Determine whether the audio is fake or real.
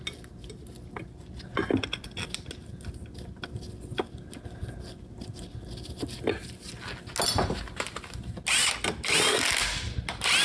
real